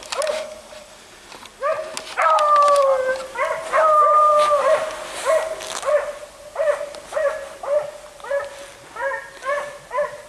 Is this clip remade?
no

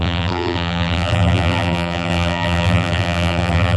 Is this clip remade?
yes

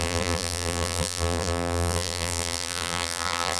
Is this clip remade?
yes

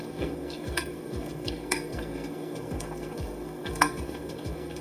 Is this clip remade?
yes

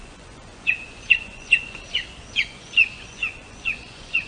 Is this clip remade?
yes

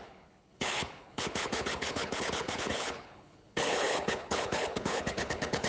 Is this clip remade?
yes